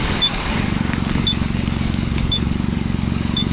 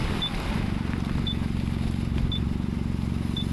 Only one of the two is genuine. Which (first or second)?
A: second